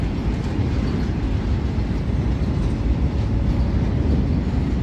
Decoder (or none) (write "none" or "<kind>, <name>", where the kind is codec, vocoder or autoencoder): none